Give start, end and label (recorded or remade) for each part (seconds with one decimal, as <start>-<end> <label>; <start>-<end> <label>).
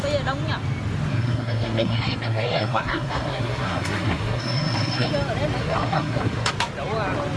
0.0-1.1 recorded; 1.1-5.1 remade; 5.1-5.6 recorded; 5.6-6.5 remade; 6.5-7.4 recorded